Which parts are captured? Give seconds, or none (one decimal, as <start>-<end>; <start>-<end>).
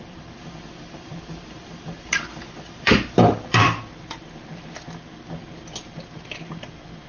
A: 3.8-7.1